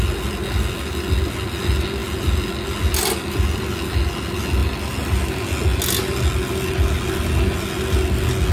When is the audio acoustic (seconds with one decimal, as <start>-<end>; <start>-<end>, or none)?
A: 0.0-8.5